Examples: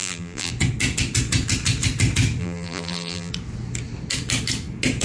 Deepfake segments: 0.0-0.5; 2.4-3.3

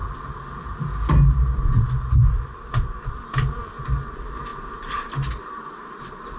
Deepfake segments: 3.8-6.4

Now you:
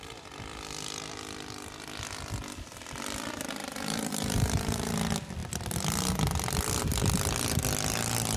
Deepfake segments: 3.6-4.9

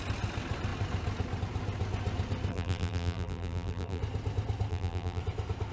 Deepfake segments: 2.5-4.0; 4.7-5.2